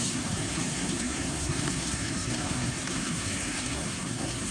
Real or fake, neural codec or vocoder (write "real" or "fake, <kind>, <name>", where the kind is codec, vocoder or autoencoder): fake, codec, SNAC